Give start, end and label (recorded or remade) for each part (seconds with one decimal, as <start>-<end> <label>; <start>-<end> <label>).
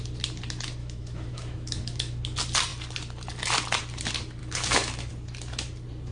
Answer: 0.0-0.8 recorded; 0.8-2.2 remade; 2.2-4.4 recorded; 4.4-5.1 remade; 5.1-6.1 recorded